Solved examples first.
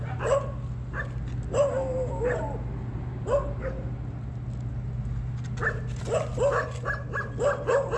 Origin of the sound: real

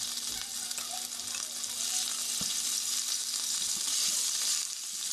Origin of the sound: real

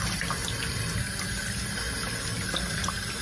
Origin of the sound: real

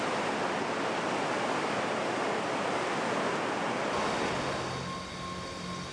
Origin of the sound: real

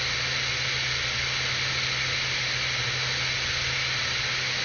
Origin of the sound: real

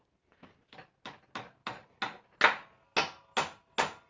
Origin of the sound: real